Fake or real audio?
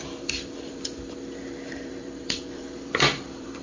fake